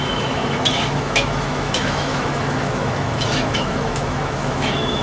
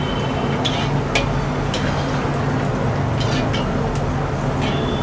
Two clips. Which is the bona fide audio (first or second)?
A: second